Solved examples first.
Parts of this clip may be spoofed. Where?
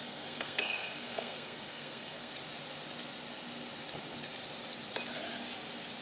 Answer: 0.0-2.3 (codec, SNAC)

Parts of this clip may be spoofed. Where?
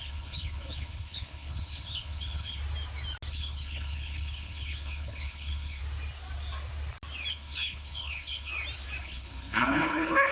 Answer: 0.0-2.6 (codec, HILCodec); 3.3-5.8; 7.3-8.5; 9.0-10.3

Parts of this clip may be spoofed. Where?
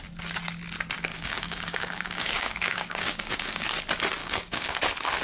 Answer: 1.1-3.7 (codec, DAC); 4.2-4.8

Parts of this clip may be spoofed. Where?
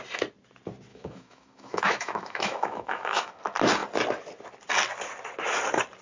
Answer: 0.9-3.4 (autoencoder, DAC-VAE)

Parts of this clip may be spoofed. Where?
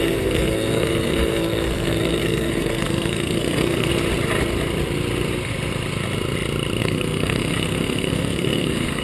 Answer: 0.0-3.9 (codec, SNAC); 6.8-9.0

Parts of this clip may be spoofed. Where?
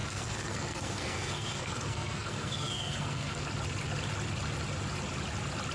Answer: 0.0-3.4 (codec, SNAC)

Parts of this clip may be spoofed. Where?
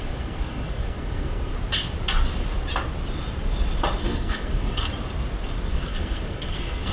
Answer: 0.0-1.5 (codec, SNAC); 4.0-4.9; 5.7-6.9